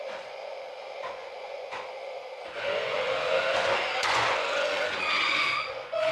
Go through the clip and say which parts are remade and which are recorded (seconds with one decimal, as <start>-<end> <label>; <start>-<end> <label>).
0.0-6.1 remade